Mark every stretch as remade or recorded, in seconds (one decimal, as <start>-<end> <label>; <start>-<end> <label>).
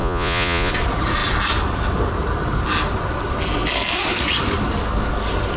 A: 0.0-0.7 remade; 0.7-5.6 recorded